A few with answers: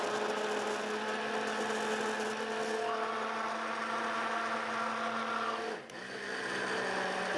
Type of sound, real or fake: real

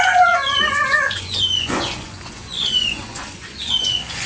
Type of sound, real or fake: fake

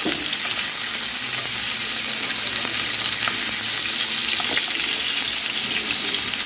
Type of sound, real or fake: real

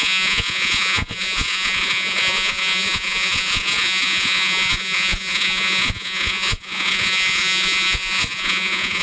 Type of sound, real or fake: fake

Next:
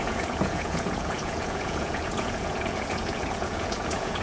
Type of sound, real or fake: fake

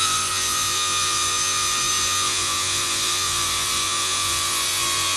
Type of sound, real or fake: fake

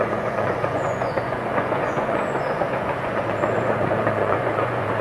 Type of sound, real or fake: fake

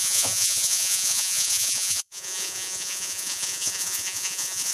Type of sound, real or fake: fake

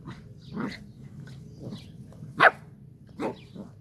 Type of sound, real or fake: real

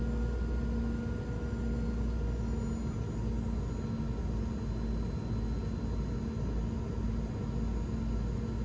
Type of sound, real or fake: real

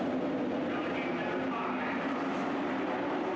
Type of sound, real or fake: real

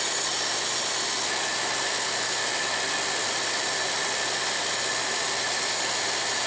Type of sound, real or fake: real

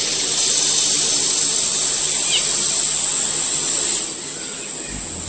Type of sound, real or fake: real